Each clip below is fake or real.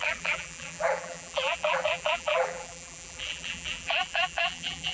fake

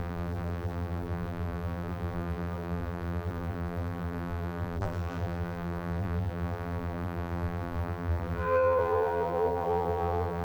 fake